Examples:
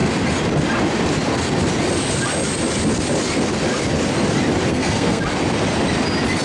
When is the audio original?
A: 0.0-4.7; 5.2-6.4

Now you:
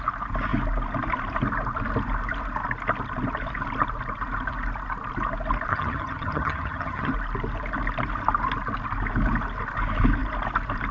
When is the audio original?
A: 0.0-5.7; 7.1-10.9

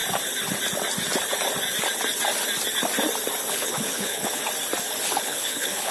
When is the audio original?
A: 0.0-3.5; 4.4-5.1